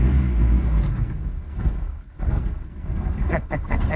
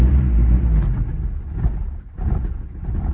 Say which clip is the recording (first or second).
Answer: second